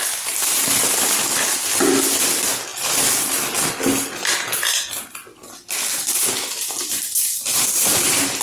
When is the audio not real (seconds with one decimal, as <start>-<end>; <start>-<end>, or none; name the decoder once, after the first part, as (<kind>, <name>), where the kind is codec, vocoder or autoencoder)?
none